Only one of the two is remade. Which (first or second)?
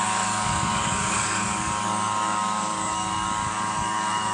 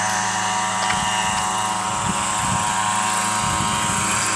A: first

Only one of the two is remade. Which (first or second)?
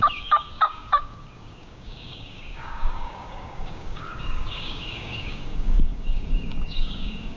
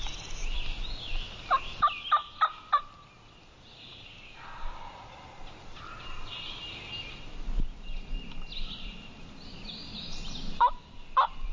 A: first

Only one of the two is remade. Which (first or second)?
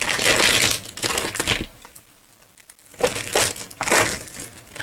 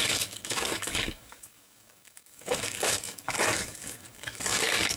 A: second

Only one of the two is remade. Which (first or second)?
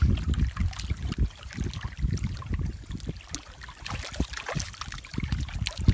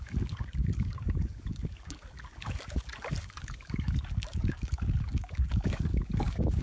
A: second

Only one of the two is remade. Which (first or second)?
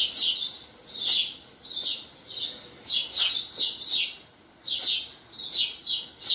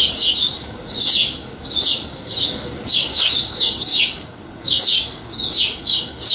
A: second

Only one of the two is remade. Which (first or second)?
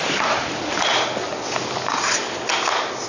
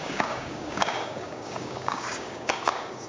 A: second